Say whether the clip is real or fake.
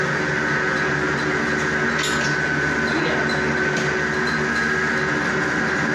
real